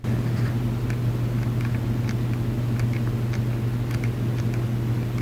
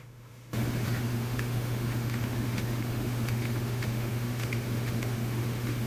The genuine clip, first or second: first